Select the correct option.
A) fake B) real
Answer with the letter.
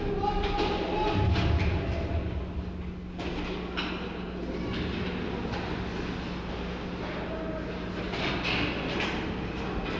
B